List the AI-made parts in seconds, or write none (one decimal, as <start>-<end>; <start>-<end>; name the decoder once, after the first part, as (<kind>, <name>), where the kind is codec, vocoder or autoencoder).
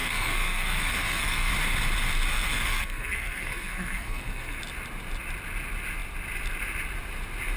0.0-1.5 (codec, SNAC); 2.3-4.6